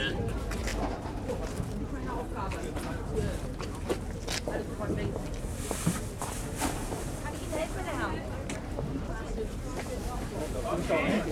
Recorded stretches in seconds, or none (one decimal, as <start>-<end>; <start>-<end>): 0.7-1.3; 3.1-6.2